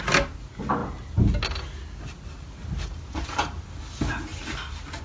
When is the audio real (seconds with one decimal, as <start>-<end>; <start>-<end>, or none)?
0.0-4.3